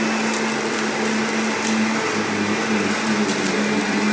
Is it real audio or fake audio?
real